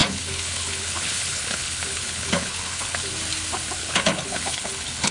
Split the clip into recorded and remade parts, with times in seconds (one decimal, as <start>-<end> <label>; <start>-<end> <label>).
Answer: 0.0-3.1 remade; 3.1-3.8 recorded; 3.8-5.1 remade